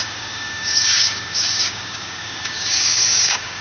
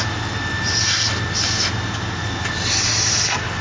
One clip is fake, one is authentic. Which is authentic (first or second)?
second